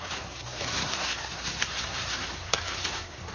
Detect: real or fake fake